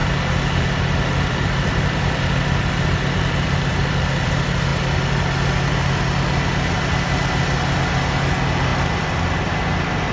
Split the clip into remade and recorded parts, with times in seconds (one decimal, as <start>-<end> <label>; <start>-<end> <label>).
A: 0.0-4.3 remade; 4.3-8.7 recorded; 8.7-9.5 remade; 9.5-10.1 recorded